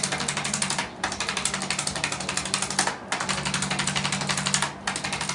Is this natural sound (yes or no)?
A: yes